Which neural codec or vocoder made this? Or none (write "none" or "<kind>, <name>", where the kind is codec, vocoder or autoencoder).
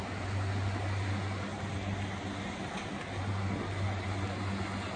none